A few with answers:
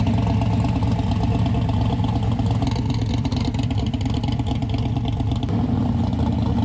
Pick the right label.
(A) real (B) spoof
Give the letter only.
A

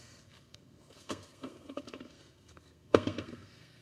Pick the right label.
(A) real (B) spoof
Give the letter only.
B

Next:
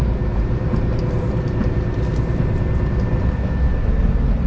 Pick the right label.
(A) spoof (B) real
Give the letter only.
B